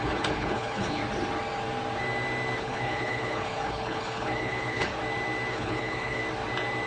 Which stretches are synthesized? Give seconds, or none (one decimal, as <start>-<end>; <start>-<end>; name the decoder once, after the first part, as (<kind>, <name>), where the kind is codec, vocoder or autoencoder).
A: 0.0-1.0 (codec, HILCodec); 2.6-4.9; 5.5-6.2